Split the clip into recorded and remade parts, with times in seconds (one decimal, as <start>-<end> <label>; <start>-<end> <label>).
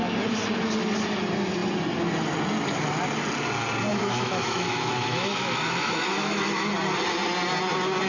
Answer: 0.0-3.9 recorded; 3.9-6.7 remade; 6.7-8.1 recorded